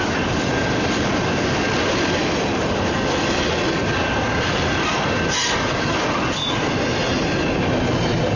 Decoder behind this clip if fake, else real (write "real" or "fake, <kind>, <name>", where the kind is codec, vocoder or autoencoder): real